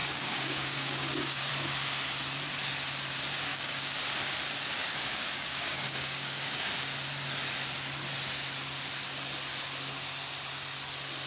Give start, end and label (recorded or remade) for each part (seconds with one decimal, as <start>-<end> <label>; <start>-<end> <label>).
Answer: 0.0-1.5 remade; 1.5-3.5 recorded; 3.5-4.0 remade; 4.0-4.8 recorded; 4.8-6.7 remade; 6.7-11.3 recorded

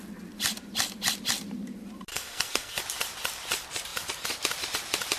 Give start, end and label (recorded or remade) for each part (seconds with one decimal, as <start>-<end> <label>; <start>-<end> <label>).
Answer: 0.0-2.1 recorded; 2.1-2.8 remade; 2.8-5.2 recorded

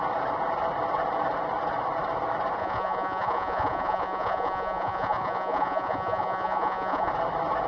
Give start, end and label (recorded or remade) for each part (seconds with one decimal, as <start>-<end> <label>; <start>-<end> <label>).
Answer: 0.0-2.6 recorded; 2.6-7.1 remade; 7.1-7.7 recorded

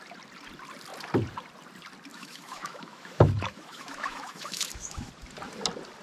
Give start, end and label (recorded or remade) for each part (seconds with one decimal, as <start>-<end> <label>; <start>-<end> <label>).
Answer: 0.0-2.1 recorded; 2.1-5.1 remade; 5.1-6.0 recorded

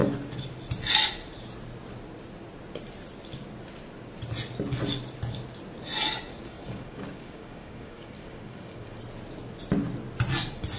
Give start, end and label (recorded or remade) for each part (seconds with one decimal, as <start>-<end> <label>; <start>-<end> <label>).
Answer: 0.0-6.3 recorded; 6.3-9.0 remade; 9.0-10.8 recorded

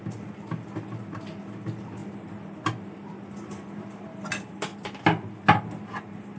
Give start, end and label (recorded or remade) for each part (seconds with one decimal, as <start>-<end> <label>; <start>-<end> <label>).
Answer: 0.0-2.0 remade; 2.0-3.3 recorded; 3.3-4.7 remade; 4.7-5.8 recorded; 5.8-6.4 remade